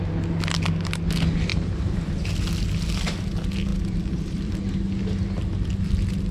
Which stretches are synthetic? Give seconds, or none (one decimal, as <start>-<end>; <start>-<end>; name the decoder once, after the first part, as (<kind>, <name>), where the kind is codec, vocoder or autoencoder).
1.5-2.1 (vocoder, BigVGAN v2); 3.7-4.5